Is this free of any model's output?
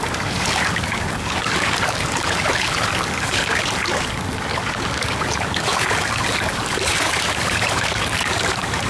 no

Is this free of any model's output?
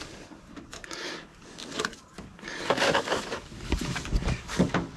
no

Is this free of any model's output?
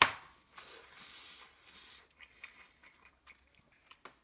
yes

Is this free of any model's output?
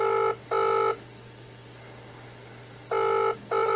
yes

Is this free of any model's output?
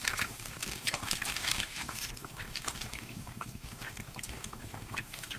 no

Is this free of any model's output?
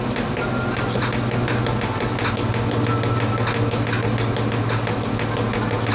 yes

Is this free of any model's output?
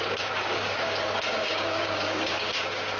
no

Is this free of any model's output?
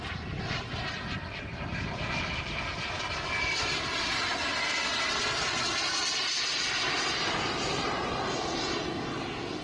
yes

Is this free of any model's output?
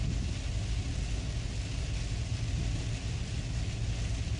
yes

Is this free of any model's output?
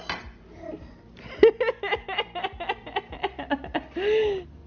yes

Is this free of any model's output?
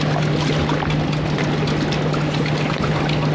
yes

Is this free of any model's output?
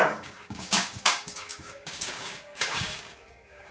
no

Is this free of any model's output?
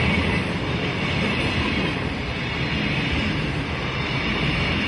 yes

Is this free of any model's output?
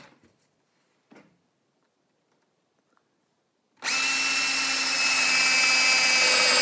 yes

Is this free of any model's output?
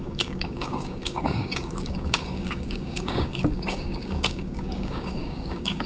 no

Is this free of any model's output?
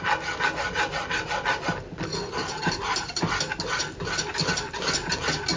yes